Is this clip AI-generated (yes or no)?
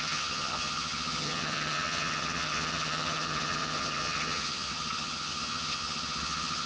yes